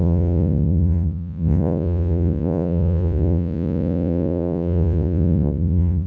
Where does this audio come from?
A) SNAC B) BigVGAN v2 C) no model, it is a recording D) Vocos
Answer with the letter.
D